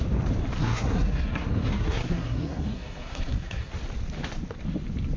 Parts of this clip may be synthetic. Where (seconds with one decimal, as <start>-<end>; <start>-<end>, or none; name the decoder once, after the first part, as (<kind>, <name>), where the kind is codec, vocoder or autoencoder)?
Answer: 0.6-3.7 (codec, SNAC)